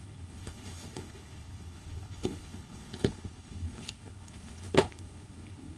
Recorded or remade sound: remade